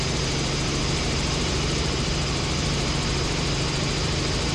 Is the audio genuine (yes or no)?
no